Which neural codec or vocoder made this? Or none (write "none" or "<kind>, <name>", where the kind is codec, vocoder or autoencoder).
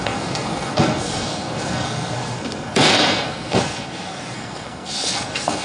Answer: codec, SNAC